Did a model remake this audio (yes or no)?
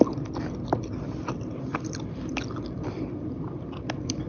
yes